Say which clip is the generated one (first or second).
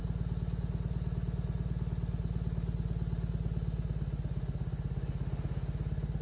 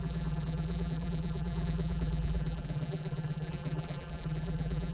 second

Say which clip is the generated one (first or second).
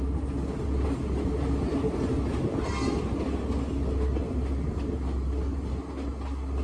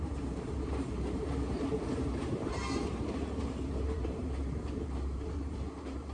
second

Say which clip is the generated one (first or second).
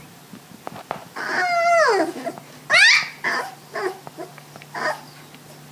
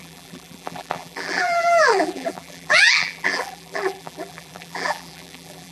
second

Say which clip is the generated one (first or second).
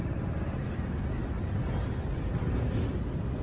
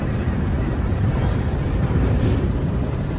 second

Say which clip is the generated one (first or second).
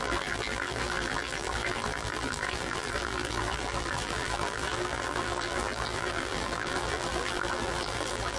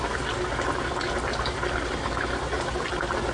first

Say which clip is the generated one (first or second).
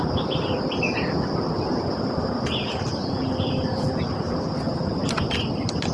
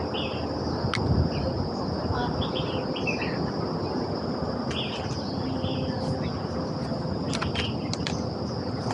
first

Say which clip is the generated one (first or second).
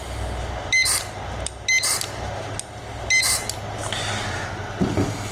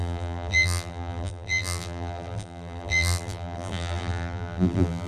second